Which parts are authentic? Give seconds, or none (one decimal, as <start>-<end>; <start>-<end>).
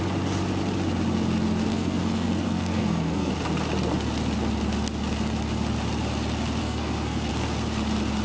0.0-1.7; 3.3-6.6; 7.3-8.2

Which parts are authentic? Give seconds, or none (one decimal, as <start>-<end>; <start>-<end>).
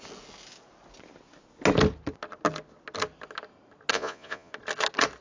0.0-3.9; 4.5-5.2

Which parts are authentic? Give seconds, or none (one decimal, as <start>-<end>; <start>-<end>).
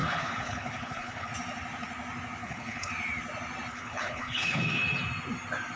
1.3-2.4; 2.9-3.7; 4.6-5.8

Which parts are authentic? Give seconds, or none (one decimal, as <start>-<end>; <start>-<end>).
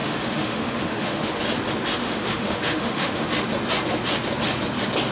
1.4-2.0; 3.3-5.1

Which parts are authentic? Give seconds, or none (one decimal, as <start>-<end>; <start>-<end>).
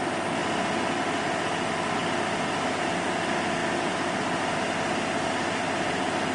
0.0-6.3